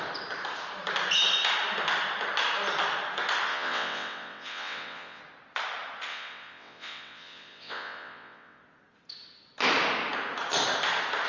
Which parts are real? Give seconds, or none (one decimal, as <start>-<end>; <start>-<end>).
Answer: 0.0-3.5; 5.2-6.1; 8.6-11.3